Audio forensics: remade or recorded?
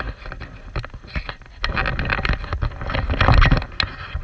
recorded